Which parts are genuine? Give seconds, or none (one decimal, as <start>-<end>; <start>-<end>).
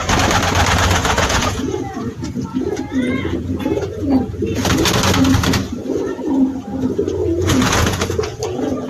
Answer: 0.0-1.0; 4.3-7.2; 8.4-8.9